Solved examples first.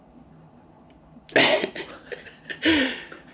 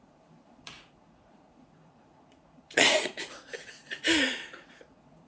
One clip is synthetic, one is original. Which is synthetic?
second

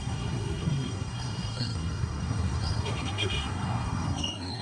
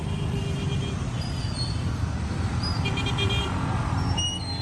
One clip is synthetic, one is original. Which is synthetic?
first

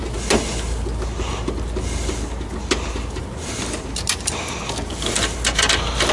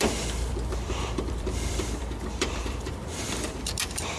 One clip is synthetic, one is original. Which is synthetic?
second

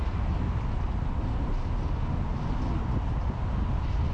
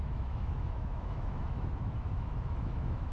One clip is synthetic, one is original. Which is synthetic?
second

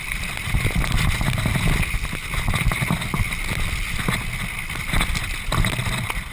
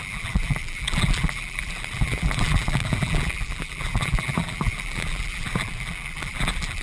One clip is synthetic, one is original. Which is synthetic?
second